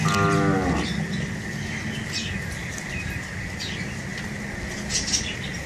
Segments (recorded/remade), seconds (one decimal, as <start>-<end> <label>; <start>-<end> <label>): 0.0-5.7 recorded